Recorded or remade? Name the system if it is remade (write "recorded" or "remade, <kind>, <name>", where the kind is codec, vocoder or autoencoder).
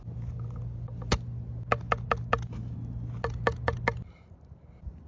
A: recorded